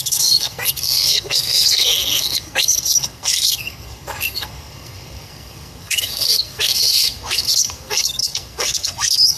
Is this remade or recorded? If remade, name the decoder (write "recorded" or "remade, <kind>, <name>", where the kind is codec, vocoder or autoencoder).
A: remade, codec, SNAC